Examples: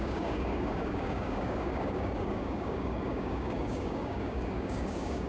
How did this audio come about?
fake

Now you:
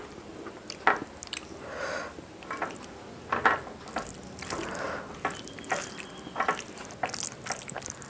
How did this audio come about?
real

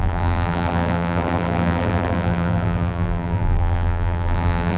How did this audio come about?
fake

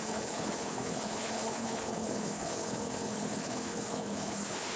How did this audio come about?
fake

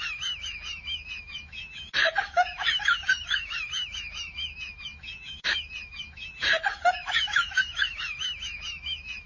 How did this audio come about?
fake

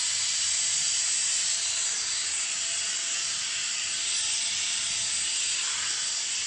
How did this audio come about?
real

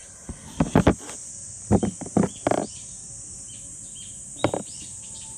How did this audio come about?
real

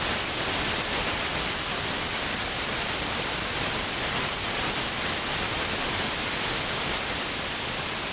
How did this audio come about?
real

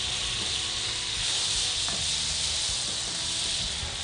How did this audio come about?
real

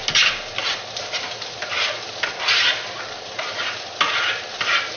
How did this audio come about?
real